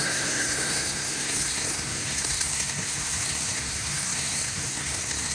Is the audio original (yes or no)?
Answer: no